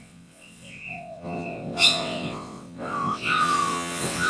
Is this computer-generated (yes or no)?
yes